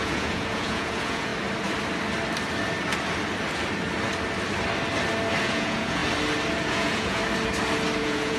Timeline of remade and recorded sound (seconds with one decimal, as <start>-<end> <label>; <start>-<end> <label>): 0.0-1.3 remade; 1.3-5.4 recorded; 5.4-6.0 remade; 6.0-6.6 recorded; 6.6-7.2 remade; 7.2-8.0 recorded; 8.0-8.4 remade